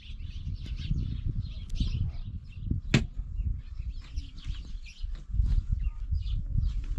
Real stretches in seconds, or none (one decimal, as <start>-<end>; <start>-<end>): 0.0-7.0